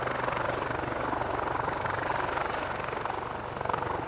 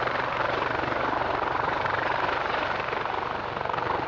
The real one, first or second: first